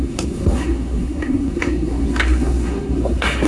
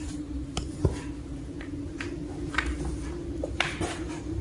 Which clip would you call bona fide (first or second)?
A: second